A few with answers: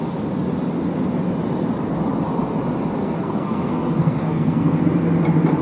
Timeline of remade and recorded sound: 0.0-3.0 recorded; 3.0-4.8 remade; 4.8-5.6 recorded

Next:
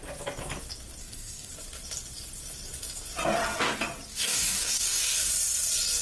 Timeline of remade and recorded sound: 0.0-1.0 recorded; 1.0-1.5 remade; 1.5-4.1 recorded; 4.1-5.3 remade; 5.3-6.0 recorded

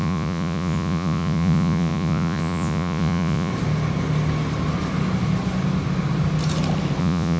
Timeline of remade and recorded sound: 0.0-3.5 remade; 3.5-7.0 recorded; 7.0-7.4 remade

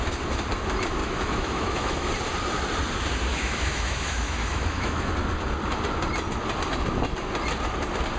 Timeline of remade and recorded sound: 0.0-1.0 recorded; 1.0-2.1 remade; 2.1-3.3 recorded; 3.3-5.1 remade; 5.1-8.2 recorded

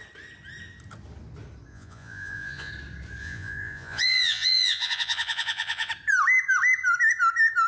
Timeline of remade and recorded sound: 0.0-1.7 recorded; 1.7-2.7 remade; 2.7-3.2 recorded; 3.2-5.9 remade; 5.9-7.7 recorded